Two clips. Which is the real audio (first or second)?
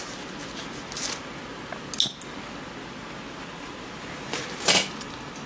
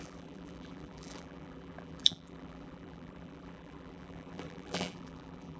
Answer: first